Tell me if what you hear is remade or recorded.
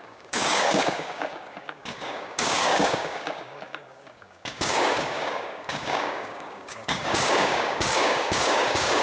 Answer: remade